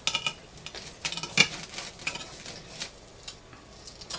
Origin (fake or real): real